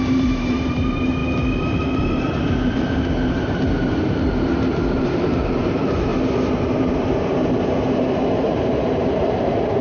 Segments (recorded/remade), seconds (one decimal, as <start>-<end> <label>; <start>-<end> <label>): 0.0-1.2 remade; 1.2-2.0 recorded; 2.0-6.1 remade; 6.1-6.9 recorded; 6.9-7.4 remade; 7.4-8.0 recorded; 8.0-9.8 remade